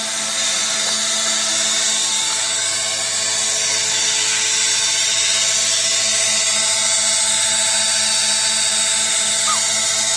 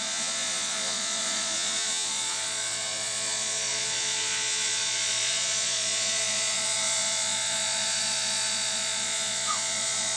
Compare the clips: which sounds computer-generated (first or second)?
second